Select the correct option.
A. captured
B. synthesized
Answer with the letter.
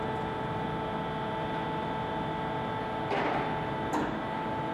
B